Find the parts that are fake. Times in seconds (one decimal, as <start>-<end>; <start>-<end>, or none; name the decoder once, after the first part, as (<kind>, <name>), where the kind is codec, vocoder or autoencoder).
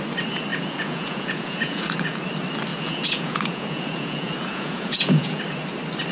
0.5-2.2 (vocoder, Vocos); 2.7-5.4